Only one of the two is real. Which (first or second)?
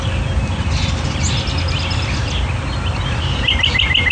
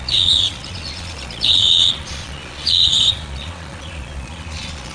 first